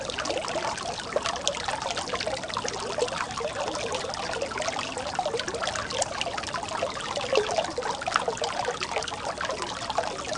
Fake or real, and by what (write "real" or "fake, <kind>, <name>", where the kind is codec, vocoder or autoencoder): real